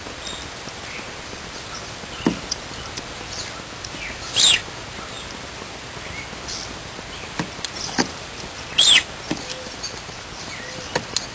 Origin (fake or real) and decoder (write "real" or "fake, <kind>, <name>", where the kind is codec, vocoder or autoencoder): real